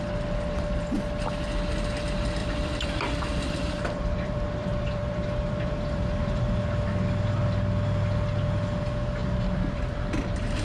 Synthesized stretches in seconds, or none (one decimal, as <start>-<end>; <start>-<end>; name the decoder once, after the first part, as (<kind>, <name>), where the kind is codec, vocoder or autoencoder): 2.4-6.6 (vocoder, BigVGAN v2); 9.2-10.6